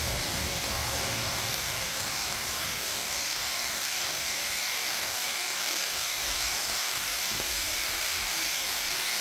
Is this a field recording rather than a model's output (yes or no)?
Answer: no